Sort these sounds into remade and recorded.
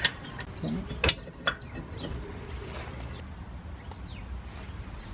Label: recorded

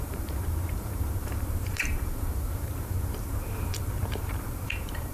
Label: remade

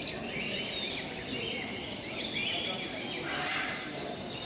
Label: recorded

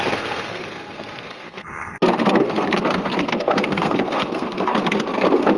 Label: remade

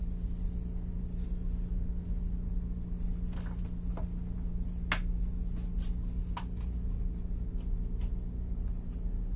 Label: recorded